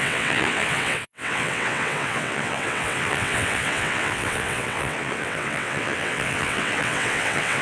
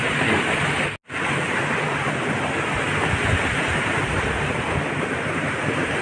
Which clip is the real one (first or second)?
second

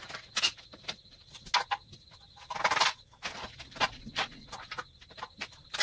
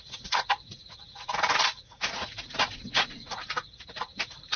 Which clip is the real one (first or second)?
first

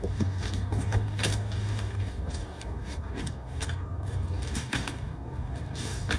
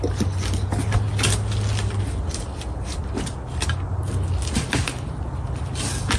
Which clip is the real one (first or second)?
second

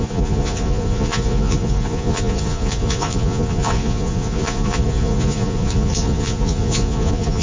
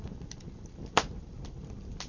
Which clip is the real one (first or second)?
second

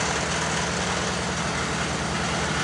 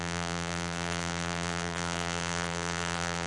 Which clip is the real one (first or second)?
first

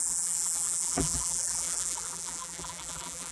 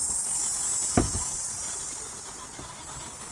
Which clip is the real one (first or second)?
second